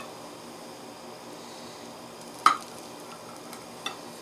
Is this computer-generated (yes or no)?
no